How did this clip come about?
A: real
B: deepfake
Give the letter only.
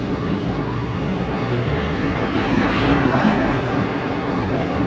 B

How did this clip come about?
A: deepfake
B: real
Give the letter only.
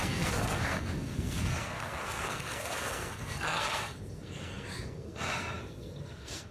A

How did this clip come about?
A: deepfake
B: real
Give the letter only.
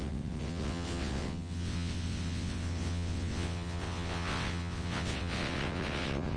A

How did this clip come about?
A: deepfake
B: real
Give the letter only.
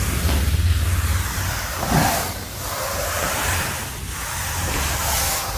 B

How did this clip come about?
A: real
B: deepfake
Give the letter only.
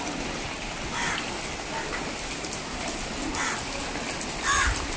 A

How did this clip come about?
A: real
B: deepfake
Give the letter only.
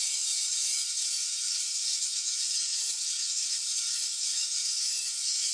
B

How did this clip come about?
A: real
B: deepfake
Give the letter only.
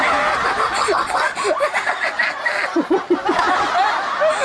A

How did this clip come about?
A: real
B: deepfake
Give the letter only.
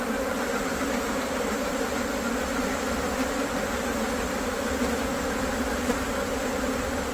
A